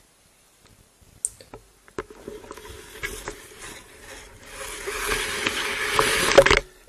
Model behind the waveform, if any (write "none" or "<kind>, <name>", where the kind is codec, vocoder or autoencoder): none